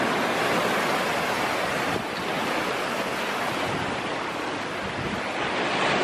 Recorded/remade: recorded